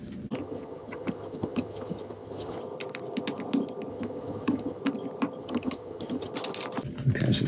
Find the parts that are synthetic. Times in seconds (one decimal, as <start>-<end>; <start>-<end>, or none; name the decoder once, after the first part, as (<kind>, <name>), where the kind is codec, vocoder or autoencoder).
0.4-2.6 (vocoder, HiFi-GAN); 3.9-4.8; 5.4-6.3